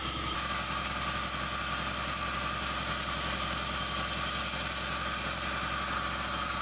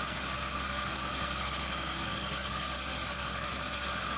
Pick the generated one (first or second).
second